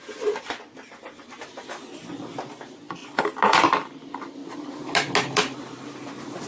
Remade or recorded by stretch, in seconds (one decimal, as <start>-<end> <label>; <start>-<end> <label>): 0.0-6.5 recorded